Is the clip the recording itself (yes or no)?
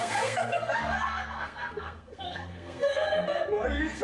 no